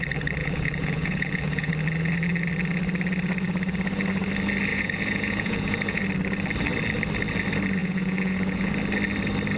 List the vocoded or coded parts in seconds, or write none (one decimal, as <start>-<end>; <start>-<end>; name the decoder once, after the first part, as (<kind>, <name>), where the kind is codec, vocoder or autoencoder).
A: 0.4-1.7 (vocoder, Vocos); 4.7-6.0; 7.8-8.7